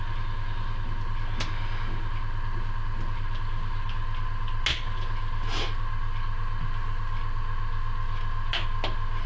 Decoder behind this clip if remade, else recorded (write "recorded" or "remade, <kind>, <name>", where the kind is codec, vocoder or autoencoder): recorded